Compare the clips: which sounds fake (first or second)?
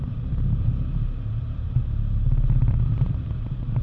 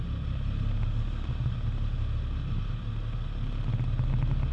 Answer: first